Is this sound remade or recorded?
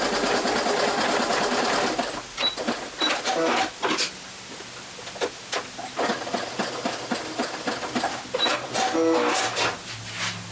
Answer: recorded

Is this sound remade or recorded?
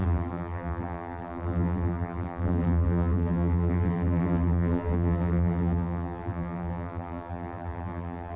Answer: remade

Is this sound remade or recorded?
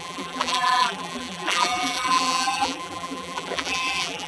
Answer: remade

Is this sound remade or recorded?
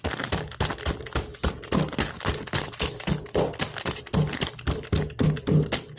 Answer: recorded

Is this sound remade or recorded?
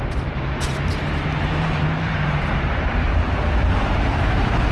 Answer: remade